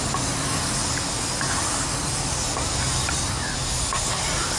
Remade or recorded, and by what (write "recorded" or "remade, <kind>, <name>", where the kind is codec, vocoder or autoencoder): recorded